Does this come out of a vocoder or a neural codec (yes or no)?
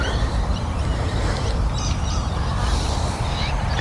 yes